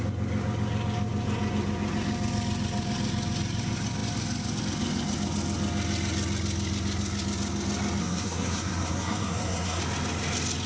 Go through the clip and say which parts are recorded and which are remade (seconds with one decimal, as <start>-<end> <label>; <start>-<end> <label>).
0.0-8.0 recorded; 8.0-9.8 remade; 9.8-10.7 recorded